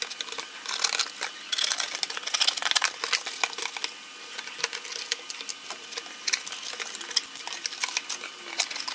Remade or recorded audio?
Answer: recorded